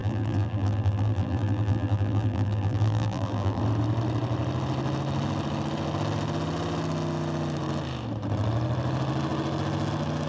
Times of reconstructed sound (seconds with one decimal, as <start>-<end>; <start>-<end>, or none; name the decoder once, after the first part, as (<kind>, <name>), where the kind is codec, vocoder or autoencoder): 0.0-3.6 (vocoder, BigVGAN v2)